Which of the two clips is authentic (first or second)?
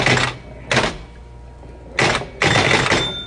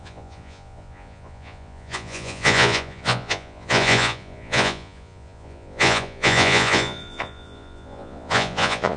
first